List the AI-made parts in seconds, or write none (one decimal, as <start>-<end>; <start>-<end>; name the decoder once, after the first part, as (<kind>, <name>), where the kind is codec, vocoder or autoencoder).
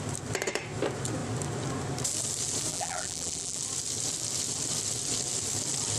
2.7-3.6 (vocoder, BigVGAN v2)